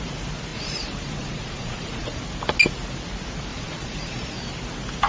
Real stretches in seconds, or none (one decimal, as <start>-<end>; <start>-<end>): 0.0-0.5; 2.2-3.5; 4.2-5.1